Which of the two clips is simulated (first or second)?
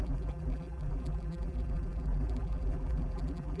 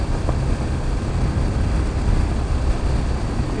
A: first